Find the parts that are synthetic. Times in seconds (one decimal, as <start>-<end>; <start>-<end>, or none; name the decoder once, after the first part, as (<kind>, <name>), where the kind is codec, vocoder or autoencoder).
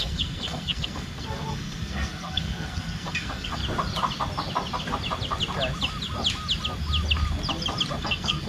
0.0-3.6 (codec, SNAC); 8.0-8.5